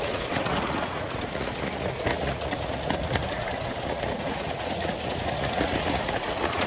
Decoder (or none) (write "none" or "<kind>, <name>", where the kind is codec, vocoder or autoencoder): vocoder, Vocos